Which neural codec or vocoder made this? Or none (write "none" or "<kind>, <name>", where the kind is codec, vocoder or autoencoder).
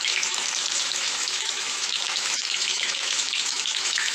autoencoder, DAC-VAE